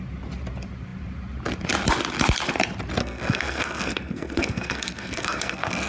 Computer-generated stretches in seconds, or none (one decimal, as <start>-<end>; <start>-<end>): 3.0-5.9